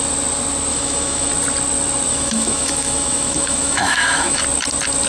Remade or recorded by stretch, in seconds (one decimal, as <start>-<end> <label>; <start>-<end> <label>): 0.0-0.7 recorded; 0.7-1.3 remade; 1.3-2.1 recorded; 2.1-4.4 remade; 4.4-5.1 recorded